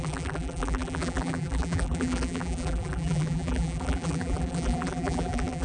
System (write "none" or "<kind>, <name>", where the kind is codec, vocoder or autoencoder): vocoder, BigVGAN v2